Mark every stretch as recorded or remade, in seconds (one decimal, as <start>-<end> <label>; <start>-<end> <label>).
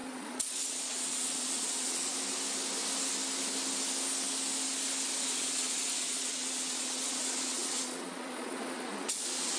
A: 0.0-2.1 remade; 2.1-5.2 recorded; 5.2-9.6 remade